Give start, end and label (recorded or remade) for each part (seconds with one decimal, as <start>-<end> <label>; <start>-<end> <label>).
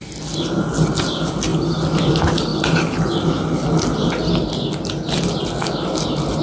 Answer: 0.0-6.4 recorded